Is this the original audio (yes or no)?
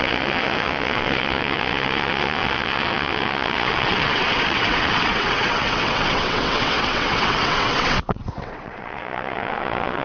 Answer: no